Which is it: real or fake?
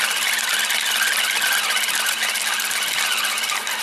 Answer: real